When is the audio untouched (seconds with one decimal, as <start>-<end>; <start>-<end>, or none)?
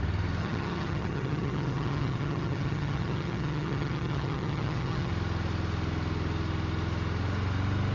0.0-0.4; 5.1-7.9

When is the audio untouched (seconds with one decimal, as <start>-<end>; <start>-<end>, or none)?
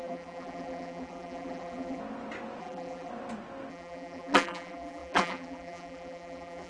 2.0-2.6; 3.1-3.7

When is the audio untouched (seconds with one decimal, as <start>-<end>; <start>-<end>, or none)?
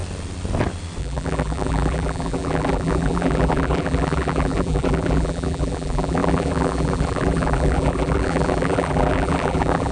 0.0-1.0